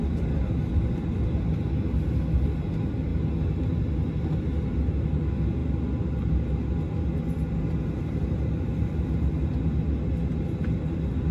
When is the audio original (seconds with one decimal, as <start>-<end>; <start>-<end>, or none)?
0.0-11.3